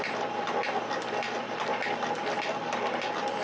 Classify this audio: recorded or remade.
recorded